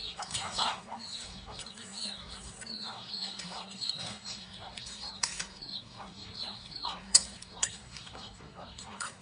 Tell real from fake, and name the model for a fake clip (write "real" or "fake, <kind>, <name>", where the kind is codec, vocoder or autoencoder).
fake, codec, SNAC